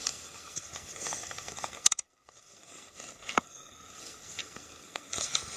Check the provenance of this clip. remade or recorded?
remade